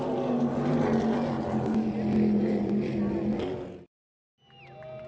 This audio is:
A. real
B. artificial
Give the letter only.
A